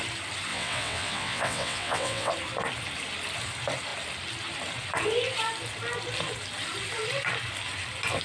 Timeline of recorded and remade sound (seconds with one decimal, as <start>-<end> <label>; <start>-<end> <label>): 0.0-0.5 recorded; 0.5-2.3 remade; 2.3-8.2 recorded